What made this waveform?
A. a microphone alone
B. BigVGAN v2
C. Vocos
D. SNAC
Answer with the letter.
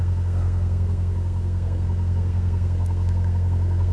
D